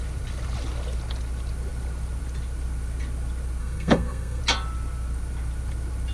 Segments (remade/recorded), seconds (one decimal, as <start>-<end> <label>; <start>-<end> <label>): 0.0-3.6 recorded; 3.6-4.4 remade; 4.4-6.1 recorded